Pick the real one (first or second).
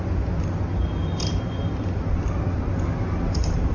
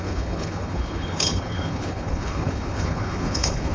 first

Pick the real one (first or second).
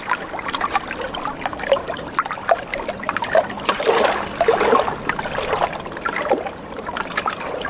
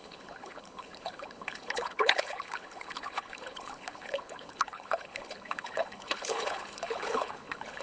first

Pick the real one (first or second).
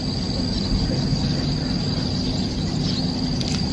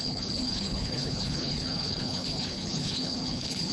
first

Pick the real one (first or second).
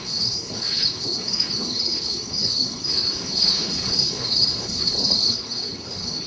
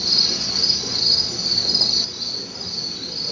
second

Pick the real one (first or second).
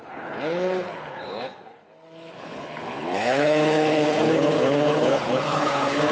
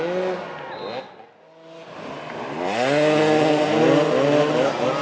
second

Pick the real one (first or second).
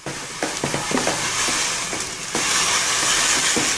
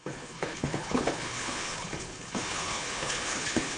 first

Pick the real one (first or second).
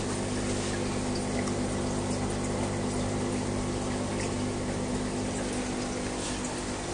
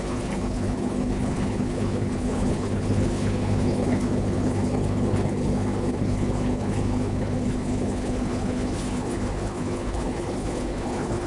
first